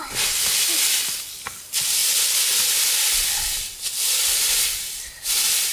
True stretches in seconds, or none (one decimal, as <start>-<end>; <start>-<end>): 0.0-5.7

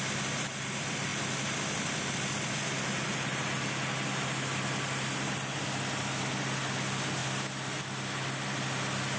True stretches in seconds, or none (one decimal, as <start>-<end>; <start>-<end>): 0.0-9.2

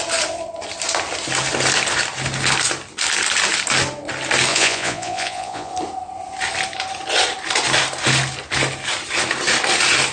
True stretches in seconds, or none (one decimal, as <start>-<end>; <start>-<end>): 0.0-4.5; 5.7-10.1

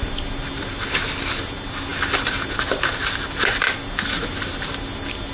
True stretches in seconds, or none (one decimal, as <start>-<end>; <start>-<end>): 0.0-5.3

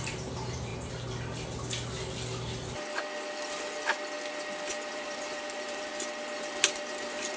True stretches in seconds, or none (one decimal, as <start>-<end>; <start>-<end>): 0.7-4.9; 5.9-6.4

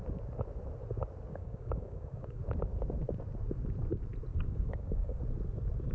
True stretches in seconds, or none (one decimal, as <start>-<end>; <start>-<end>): 0.0-1.3; 2.4-4.3; 5.2-5.9

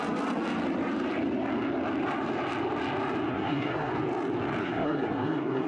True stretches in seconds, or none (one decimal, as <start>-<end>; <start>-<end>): 0.0-3.3; 3.9-4.6

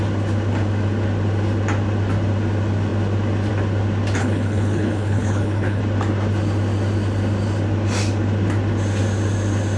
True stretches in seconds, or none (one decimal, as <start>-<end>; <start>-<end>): 0.0-4.2; 5.8-9.8